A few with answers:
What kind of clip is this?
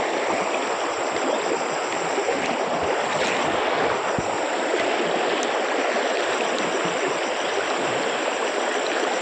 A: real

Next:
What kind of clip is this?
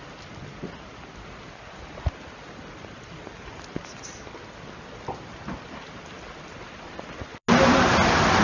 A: real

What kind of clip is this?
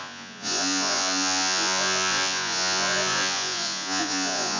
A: fake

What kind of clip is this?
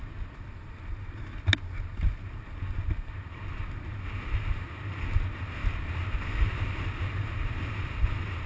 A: real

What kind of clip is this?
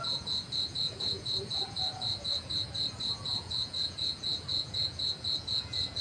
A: fake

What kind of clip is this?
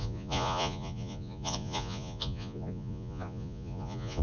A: fake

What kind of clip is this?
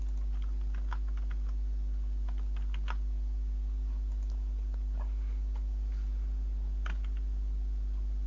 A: real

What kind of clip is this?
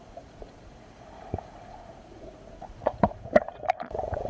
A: fake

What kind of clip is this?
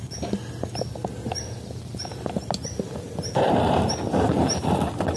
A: real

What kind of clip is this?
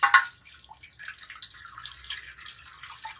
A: real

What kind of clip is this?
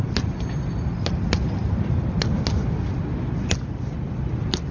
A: real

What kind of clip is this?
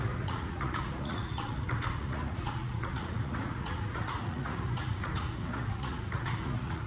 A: fake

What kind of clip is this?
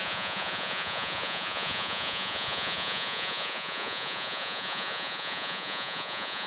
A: fake